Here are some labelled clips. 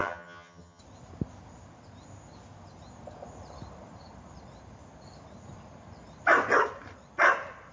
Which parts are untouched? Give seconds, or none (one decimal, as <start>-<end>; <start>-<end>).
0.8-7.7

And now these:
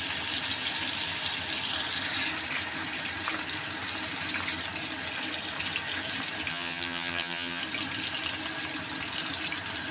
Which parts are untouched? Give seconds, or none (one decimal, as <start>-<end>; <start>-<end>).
0.0-6.5; 7.6-9.9

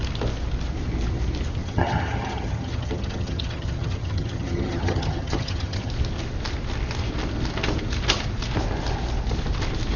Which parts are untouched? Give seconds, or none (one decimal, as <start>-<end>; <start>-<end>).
0.0-1.6; 5.9-10.0